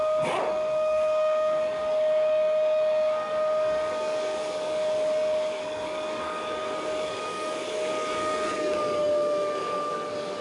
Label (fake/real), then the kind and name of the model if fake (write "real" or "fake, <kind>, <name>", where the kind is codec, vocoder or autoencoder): fake, codec, DAC